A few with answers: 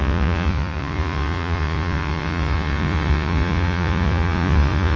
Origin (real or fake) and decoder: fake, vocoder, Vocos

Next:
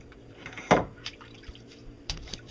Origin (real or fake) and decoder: fake, vocoder, BigVGAN v2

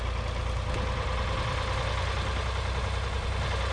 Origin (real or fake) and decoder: real